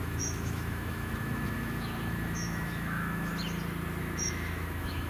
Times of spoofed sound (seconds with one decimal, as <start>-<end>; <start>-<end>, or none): 0.0-3.3; 4.0-5.1